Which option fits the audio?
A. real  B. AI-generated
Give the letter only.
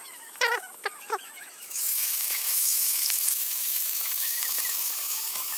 B